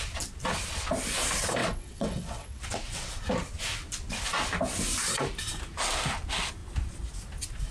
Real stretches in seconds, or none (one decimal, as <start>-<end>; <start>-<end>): 0.0-1.6; 3.1-7.7